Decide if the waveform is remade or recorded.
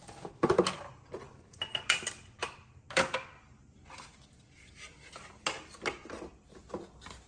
recorded